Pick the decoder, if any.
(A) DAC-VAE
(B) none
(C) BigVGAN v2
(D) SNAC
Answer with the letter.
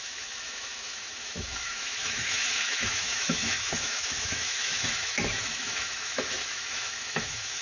A